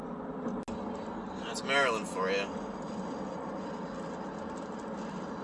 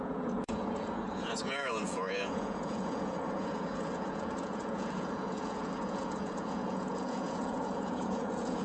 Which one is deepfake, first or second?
second